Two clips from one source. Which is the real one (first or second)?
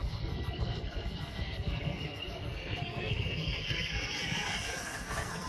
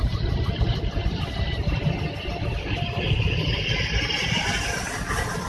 second